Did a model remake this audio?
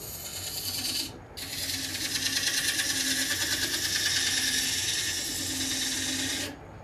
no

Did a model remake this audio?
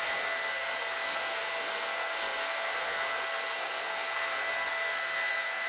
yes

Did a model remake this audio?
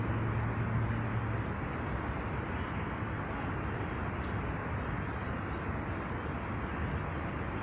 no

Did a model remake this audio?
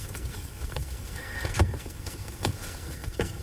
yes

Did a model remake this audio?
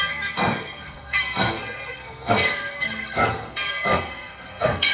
yes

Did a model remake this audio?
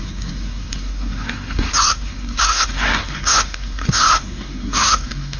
yes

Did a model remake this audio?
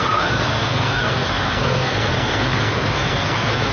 yes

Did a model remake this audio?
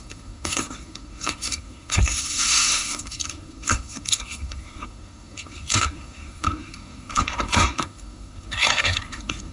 yes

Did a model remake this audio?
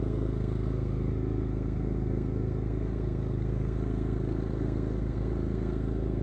yes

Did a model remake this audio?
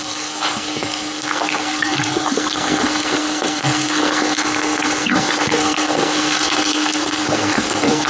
yes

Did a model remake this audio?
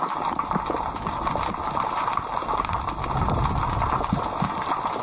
no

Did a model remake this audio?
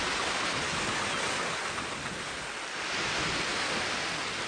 no